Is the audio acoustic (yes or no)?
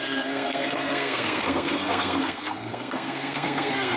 no